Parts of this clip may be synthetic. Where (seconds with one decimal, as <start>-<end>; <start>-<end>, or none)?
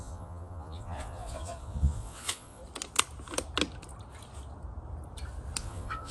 0.0-2.6; 5.6-6.1